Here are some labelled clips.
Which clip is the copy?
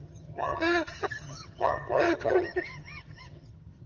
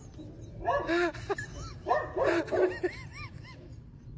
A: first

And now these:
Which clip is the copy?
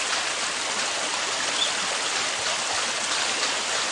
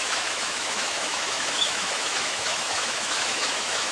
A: second